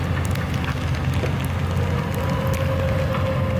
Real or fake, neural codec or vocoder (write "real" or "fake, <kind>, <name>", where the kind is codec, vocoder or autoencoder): real